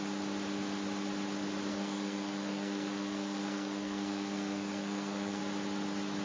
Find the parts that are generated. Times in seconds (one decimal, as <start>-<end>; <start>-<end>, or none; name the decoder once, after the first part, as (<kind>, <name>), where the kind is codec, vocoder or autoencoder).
1.7-5.4 (codec, SNAC)